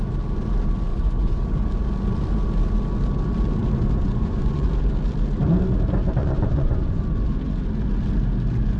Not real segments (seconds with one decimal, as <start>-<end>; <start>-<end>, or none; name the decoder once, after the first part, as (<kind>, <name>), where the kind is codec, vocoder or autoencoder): 0.9-1.4 (vocoder, Vocos); 4.0-4.7; 6.2-7.0